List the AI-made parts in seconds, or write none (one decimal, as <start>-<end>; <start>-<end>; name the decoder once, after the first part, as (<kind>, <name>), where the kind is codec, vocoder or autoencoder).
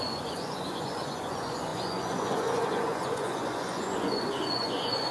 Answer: 0.0-5.1 (vocoder, Vocos)